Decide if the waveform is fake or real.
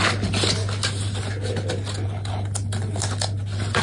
real